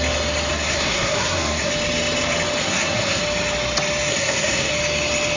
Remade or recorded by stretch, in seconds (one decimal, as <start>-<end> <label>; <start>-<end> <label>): 0.0-0.5 recorded; 0.5-1.7 remade; 1.7-2.6 recorded; 2.6-3.2 remade; 3.2-4.1 recorded; 4.1-4.7 remade; 4.7-5.4 recorded